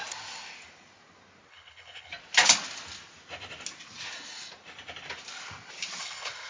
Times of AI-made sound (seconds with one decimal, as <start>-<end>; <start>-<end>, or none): 1.5-2.1; 6.0-6.5